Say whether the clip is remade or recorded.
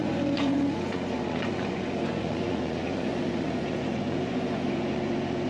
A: remade